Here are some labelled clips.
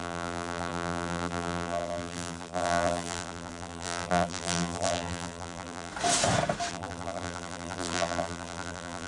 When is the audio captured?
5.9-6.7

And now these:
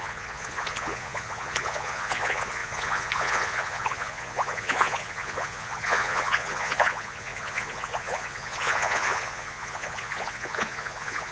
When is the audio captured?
none

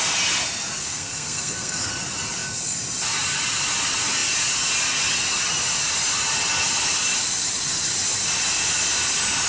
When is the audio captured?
0.0-0.8; 1.9-9.5